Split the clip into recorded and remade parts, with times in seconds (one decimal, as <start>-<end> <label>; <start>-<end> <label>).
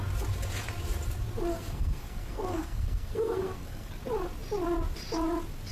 0.0-1.5 recorded; 1.5-3.9 remade; 3.9-5.7 recorded